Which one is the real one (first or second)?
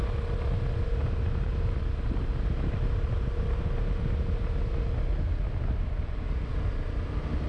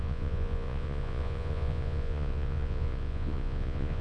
first